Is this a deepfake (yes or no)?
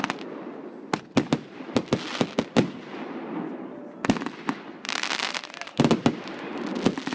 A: no